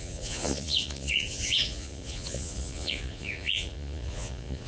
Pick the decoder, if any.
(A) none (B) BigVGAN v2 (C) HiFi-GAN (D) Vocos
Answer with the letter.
D